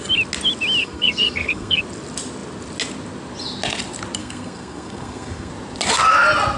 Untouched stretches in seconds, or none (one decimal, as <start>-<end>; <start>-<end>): 0.0-0.8; 1.8-4.2; 5.5-6.6